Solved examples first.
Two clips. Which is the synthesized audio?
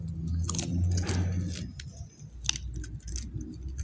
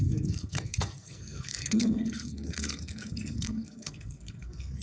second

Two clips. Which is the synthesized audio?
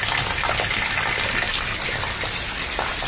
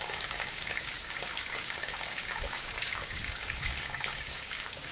second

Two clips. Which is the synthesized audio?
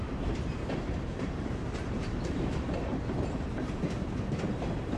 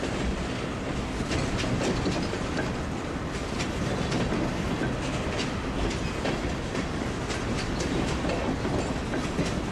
first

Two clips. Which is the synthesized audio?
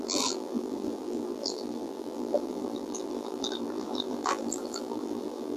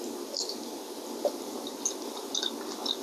first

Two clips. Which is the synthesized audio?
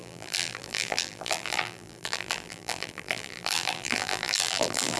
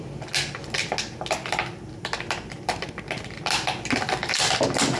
first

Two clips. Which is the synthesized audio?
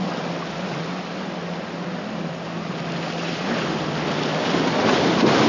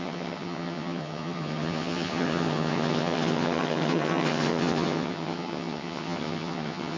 second